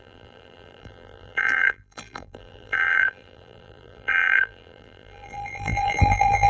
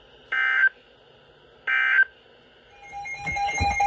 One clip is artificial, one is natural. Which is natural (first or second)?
second